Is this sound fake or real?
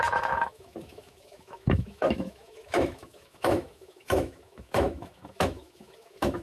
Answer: fake